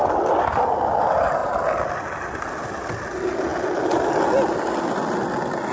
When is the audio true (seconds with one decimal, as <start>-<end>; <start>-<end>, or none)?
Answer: 0.0-5.7